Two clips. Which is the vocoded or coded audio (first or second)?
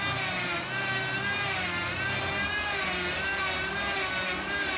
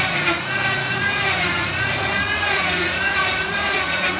second